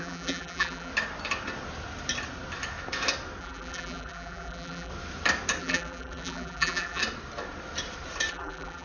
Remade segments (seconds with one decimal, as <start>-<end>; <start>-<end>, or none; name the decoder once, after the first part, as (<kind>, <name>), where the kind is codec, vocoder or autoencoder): 0.0-0.9 (vocoder, BigVGAN v2); 3.4-4.9; 5.6-7.0; 8.3-8.8